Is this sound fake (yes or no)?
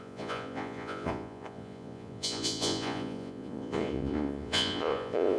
yes